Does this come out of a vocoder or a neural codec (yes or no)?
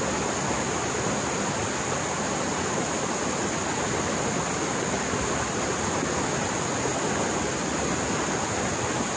no